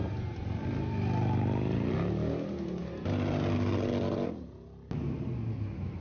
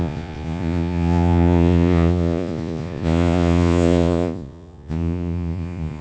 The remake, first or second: second